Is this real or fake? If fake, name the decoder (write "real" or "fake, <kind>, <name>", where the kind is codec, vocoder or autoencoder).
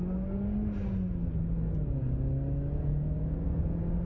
real